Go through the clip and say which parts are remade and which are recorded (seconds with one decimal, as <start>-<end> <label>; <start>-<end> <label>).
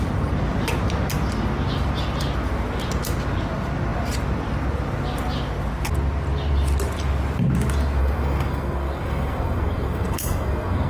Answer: 0.0-8.0 recorded; 8.0-10.9 remade